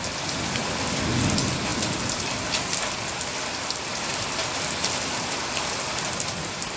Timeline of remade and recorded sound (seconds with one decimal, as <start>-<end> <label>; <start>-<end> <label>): 0.0-6.8 recorded